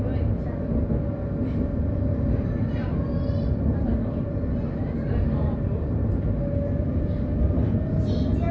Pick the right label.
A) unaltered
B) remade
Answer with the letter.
A